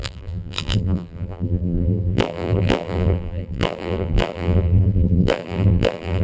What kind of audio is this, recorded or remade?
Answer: remade